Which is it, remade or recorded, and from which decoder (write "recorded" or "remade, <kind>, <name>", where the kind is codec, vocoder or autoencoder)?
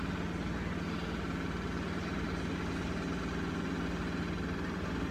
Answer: recorded